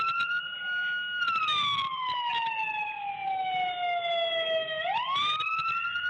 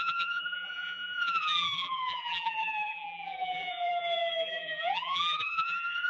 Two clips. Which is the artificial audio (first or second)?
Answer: second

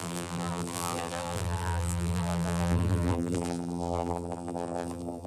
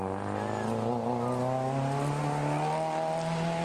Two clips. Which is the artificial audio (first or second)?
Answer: first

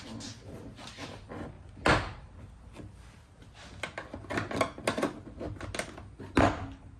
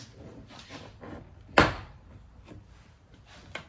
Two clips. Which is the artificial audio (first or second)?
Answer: second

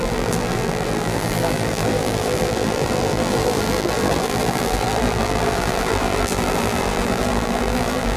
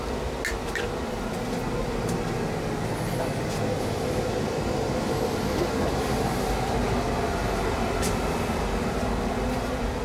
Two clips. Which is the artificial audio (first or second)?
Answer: first